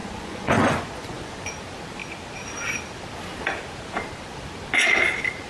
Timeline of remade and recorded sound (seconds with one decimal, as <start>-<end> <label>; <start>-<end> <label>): 0.0-1.5 remade; 1.5-5.5 recorded